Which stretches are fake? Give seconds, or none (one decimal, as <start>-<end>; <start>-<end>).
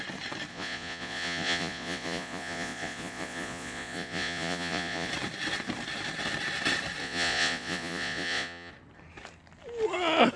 0.5-5.1; 7.0-8.7